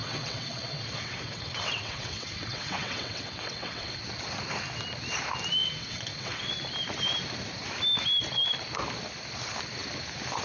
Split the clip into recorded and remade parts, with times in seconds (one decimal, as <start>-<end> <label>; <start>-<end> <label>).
0.0-4.0 remade; 4.0-5.6 recorded; 5.6-6.5 remade; 6.5-10.4 recorded